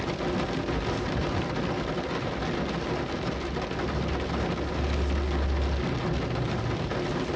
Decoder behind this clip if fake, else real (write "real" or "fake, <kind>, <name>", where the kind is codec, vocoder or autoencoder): real